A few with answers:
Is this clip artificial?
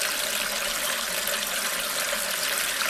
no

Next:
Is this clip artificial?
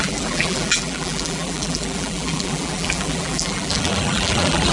yes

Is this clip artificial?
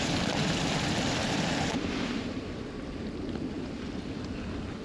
yes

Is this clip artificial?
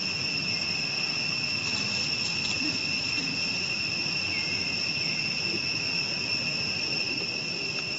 no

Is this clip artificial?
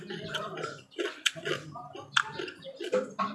yes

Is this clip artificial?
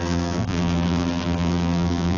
yes